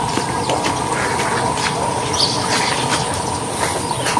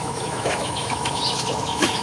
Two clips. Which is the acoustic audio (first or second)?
first